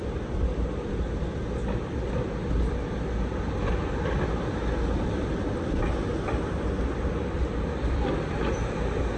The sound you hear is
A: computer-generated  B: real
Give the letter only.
B